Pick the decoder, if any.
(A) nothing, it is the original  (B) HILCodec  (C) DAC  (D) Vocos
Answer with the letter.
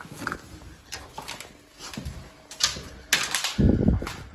A